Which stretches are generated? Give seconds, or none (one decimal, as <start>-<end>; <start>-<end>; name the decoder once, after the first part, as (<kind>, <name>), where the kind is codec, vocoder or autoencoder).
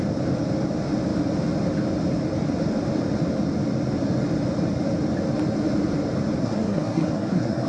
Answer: 6.4-7.7 (codec, SNAC)